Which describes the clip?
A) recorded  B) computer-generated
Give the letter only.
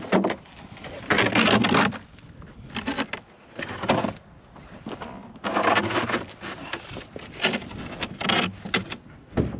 A